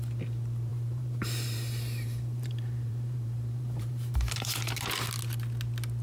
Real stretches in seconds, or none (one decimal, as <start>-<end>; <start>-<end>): 0.0-0.7; 4.3-6.0